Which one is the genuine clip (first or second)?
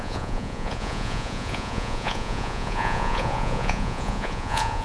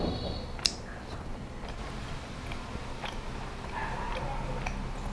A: second